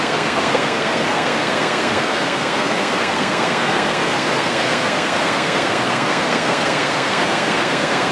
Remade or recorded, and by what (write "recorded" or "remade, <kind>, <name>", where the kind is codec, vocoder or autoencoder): remade, codec, SNAC